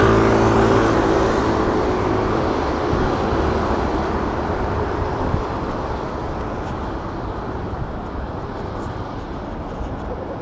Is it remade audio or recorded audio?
remade